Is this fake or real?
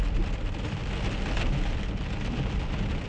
real